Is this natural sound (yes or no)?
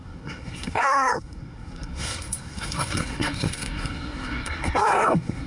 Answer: no